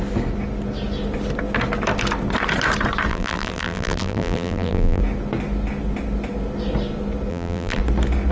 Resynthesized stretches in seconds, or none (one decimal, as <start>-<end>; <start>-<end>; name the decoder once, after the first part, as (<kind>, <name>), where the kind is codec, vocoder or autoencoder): 3.1-5.0 (vocoder, BigVGAN v2); 7.3-7.8